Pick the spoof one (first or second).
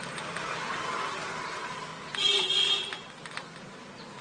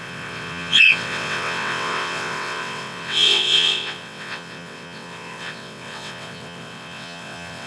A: second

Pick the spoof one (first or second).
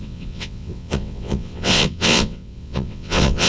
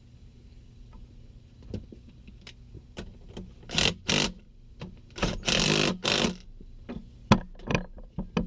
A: first